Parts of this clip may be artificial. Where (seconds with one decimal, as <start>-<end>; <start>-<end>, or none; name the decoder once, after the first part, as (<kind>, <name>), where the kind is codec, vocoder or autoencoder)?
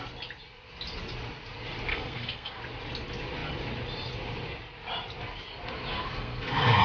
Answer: 1.9-2.6 (codec, SNAC); 5.9-6.8